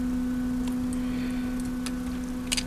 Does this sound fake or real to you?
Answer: real